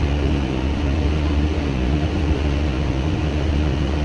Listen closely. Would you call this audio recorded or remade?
remade